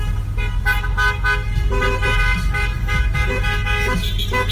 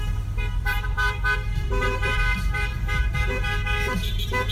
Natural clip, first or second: first